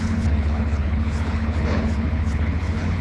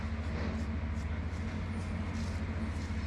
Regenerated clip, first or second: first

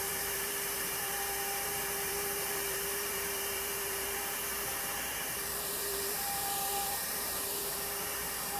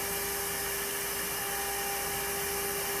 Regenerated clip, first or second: first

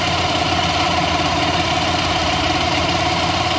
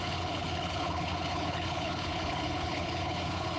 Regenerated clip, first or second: second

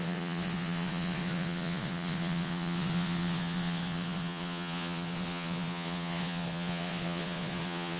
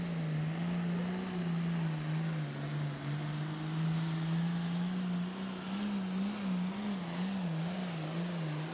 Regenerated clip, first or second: first